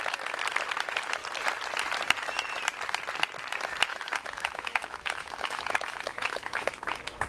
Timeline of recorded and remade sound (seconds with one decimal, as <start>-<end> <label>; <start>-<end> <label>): 0.0-3.9 recorded; 3.9-6.8 remade; 6.8-7.3 recorded